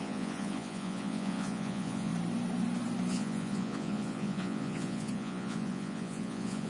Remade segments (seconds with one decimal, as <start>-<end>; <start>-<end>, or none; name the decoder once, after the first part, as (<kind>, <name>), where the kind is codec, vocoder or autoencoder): 0.0-2.1 (vocoder, Vocos); 3.1-6.7